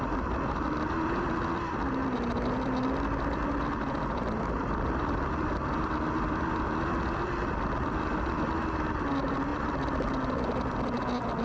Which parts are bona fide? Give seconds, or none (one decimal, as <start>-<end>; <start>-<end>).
0.0-11.4